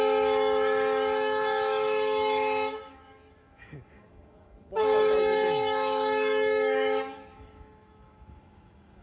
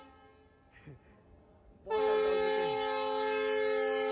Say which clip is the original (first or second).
second